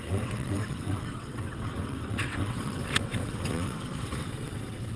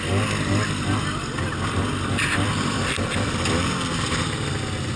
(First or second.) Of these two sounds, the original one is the second